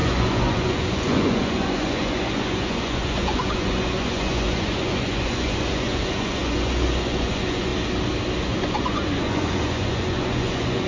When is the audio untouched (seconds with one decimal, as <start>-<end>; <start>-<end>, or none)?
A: 7.7-8.4